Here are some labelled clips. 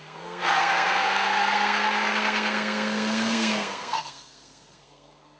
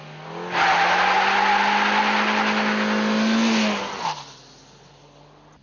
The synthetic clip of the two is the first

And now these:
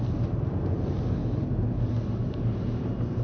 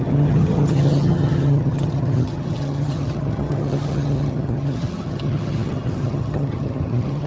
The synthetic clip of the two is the second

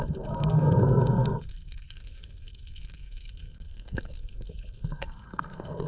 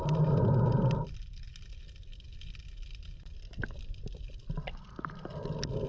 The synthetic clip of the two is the first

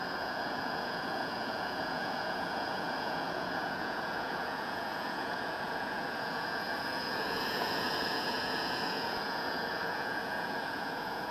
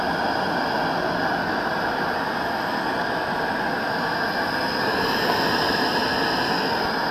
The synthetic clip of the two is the first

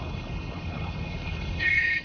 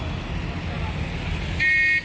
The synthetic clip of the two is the first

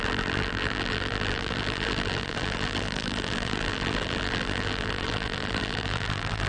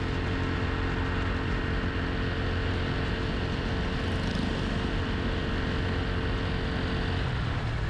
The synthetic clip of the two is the first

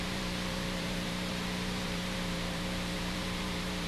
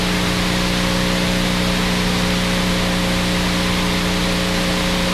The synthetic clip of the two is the first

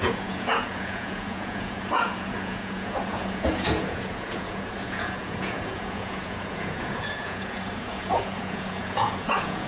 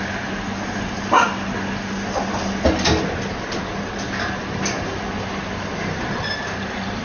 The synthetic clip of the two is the first